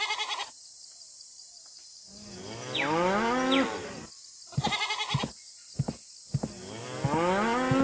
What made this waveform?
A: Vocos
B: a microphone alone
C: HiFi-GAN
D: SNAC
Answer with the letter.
B